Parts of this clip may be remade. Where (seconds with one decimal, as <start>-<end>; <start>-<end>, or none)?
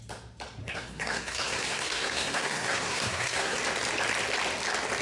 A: 0.6-3.6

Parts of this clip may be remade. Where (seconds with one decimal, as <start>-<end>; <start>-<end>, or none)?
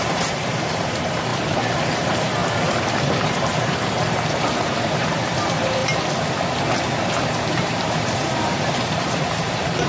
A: 0.0-5.8; 7.1-9.9